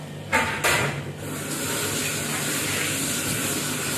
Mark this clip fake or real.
real